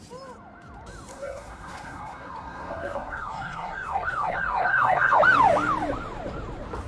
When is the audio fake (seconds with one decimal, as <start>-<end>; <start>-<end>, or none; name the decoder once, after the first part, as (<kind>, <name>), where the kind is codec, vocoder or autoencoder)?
1.1-5.2 (codec, SNAC)